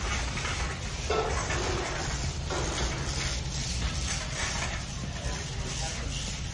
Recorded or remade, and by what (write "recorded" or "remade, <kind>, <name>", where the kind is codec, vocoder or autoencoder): recorded